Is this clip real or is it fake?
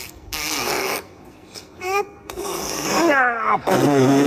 fake